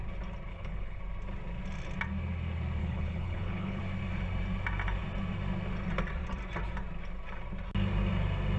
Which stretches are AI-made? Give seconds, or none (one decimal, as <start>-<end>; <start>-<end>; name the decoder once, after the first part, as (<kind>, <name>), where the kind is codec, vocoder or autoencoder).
0.5-1.0 (codec, HILCodec); 2.8-3.8